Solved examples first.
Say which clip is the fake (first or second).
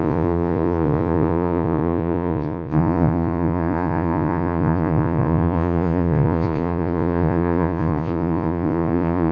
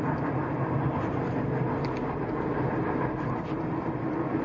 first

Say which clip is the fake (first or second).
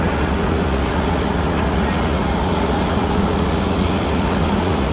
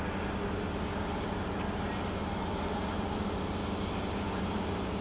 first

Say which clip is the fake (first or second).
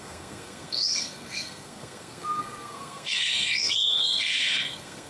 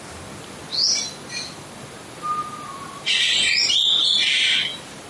first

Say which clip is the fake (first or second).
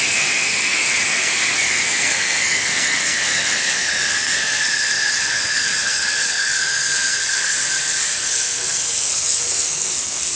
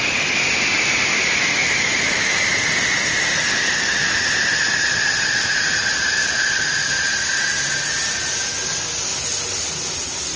first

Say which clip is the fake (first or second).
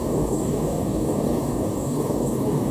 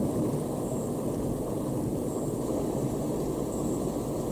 first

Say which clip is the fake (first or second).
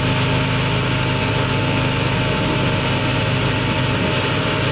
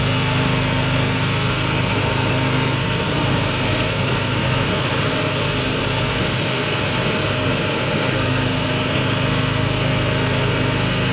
second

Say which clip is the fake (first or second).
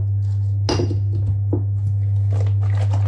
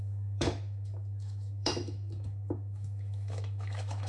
second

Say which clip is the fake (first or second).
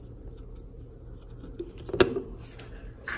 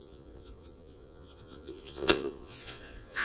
second